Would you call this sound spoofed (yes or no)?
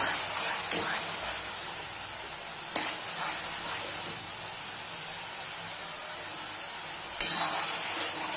no